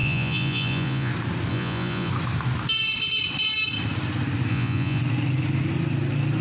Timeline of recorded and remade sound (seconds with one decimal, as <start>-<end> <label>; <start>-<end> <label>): 0.0-1.1 remade; 1.1-1.5 recorded; 1.5-2.1 remade; 2.1-4.5 recorded; 4.5-5.0 remade; 5.0-6.4 recorded